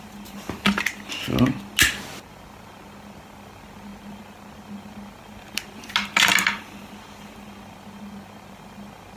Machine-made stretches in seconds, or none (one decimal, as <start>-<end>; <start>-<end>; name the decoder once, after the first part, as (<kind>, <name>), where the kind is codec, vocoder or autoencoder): none